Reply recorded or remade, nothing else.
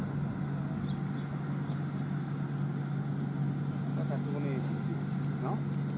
recorded